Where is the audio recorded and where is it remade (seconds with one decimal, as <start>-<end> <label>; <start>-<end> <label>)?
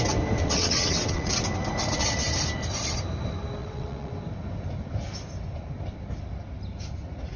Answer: 0.0-0.4 recorded; 0.4-1.3 remade; 1.3-3.6 recorded; 3.6-4.1 remade; 4.1-7.4 recorded